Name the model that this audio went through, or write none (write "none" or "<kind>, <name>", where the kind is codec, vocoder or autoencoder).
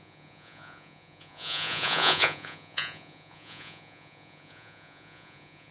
vocoder, Vocos